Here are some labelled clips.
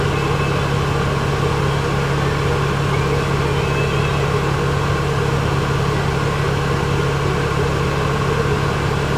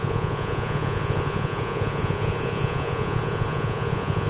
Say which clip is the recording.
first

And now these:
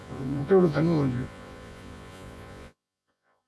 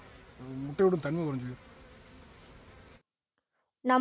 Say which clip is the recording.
second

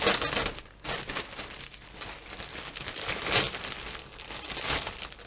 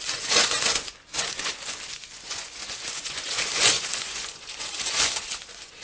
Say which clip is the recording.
first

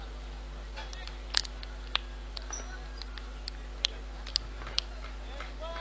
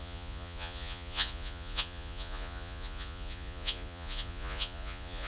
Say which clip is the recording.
first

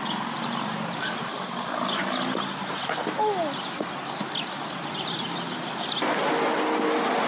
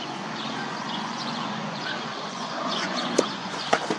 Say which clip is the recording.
first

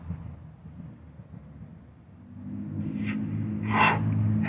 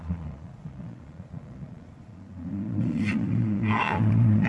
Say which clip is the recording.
first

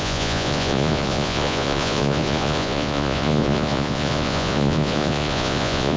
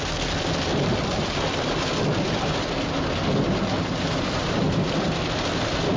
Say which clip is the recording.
second